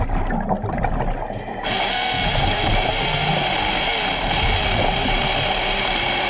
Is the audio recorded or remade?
recorded